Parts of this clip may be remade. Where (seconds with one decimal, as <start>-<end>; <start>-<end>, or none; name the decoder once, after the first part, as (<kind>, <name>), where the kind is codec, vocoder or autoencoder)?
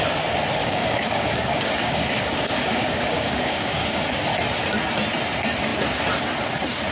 0.6-4.2 (codec, DAC)